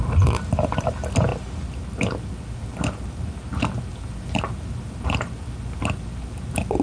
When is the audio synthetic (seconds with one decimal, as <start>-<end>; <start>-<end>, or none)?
none